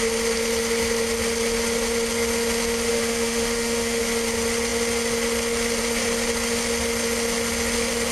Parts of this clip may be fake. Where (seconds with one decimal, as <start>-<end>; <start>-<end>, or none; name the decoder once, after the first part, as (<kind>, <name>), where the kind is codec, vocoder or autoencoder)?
2.9-4.0 (autoencoder, DAC-VAE)